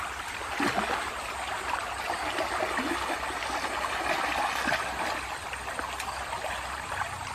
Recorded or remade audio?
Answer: recorded